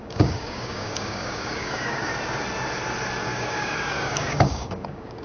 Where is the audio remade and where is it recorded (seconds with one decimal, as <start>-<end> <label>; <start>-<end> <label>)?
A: 0.0-2.1 remade; 2.1-3.2 recorded; 3.2-5.2 remade